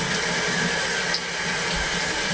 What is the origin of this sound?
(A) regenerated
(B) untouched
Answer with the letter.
B